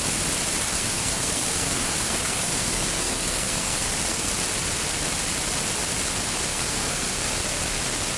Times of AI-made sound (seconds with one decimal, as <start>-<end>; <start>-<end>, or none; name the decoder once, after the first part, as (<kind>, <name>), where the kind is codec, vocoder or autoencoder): 0.7-4.3 (codec, SNAC); 6.5-7.6